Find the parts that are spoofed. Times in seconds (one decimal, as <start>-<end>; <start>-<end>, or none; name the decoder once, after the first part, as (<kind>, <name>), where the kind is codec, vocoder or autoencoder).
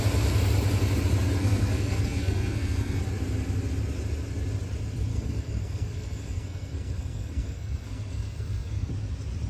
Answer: 1.4-3.0 (codec, SNAC); 5.1-8.9